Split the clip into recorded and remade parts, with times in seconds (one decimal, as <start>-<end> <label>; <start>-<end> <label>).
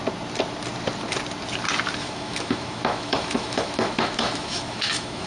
0.0-2.0 recorded; 2.0-5.3 remade